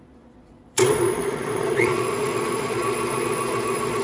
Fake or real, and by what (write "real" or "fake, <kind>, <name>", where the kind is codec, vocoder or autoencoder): fake, vocoder, Vocos